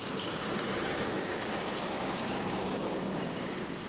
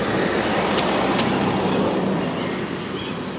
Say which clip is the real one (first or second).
second